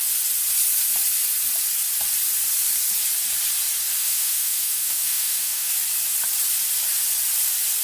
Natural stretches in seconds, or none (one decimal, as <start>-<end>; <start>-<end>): 0.0-4.0; 5.7-7.8